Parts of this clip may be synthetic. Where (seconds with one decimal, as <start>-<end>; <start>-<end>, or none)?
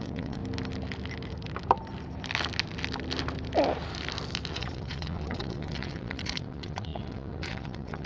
0.0-0.4; 4.5-8.1